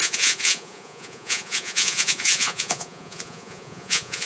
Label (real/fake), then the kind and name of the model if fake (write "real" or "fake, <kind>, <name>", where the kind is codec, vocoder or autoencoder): fake, vocoder, Vocos